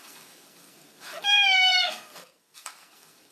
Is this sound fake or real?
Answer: fake